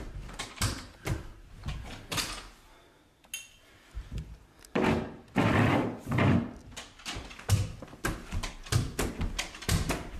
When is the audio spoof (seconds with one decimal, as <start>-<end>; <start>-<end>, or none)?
0.0-1.3; 3.5-10.2